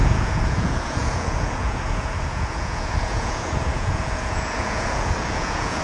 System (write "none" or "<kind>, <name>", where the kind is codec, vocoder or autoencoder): vocoder, Vocos